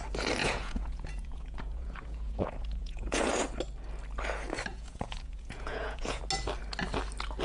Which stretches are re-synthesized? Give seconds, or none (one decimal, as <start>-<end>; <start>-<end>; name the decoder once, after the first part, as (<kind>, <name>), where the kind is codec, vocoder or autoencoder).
0.4-3.3 (vocoder, Vocos); 4.7-6.2